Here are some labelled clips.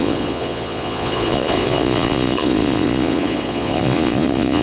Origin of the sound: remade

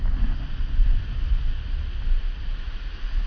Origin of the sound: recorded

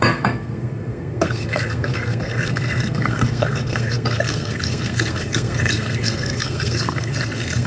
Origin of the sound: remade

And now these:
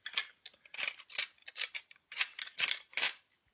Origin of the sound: recorded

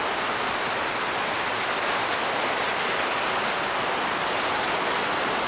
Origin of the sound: recorded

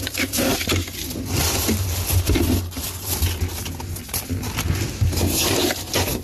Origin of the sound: recorded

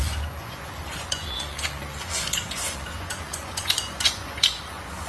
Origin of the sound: remade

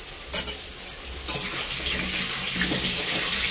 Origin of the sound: recorded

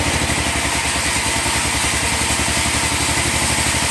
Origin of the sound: recorded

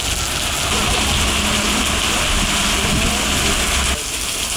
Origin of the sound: recorded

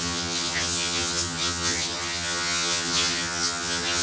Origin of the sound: remade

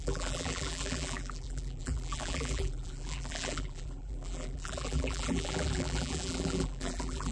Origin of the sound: remade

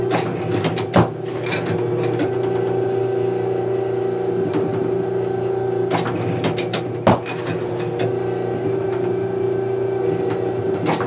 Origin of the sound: recorded